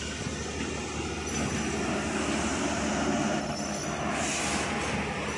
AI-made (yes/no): no